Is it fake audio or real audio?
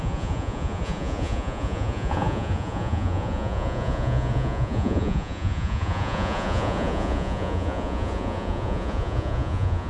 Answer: fake